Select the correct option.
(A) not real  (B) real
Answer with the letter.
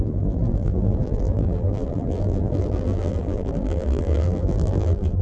A